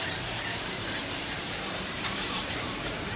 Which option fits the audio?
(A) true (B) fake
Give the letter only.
B